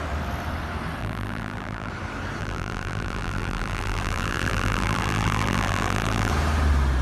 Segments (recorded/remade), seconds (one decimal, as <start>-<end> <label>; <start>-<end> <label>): 0.0-1.0 recorded; 1.0-1.9 remade; 1.9-2.4 recorded; 2.4-6.3 remade; 6.3-7.0 recorded